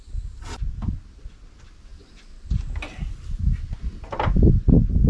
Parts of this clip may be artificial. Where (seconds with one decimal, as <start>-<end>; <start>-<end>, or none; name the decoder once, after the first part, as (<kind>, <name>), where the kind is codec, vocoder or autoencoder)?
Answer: none